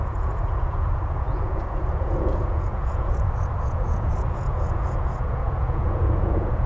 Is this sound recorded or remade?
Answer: remade